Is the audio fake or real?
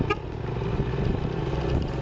real